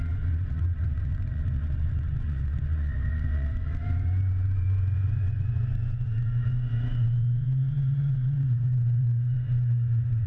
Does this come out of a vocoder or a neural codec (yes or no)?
yes